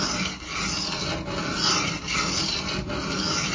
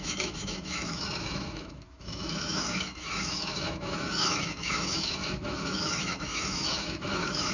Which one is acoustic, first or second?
first